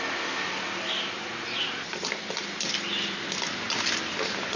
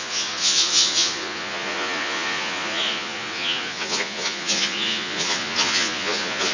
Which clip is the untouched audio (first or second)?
first